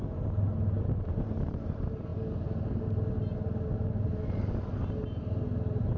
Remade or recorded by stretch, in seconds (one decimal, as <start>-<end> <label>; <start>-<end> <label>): 0.0-6.0 recorded